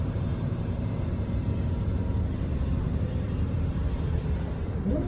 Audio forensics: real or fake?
fake